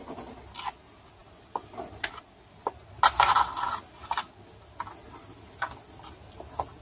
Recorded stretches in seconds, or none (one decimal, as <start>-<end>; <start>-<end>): 0.0-6.8